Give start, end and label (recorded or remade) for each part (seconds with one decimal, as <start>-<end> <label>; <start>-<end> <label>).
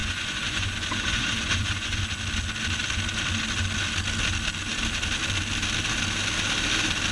0.0-2.0 remade; 2.0-7.1 recorded